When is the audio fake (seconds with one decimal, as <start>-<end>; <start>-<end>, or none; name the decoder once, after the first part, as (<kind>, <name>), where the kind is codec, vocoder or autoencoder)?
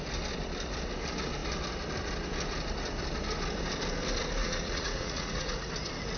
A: 4.4-5.7 (vocoder, Vocos)